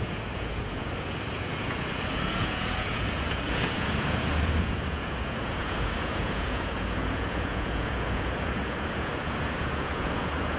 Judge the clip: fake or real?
fake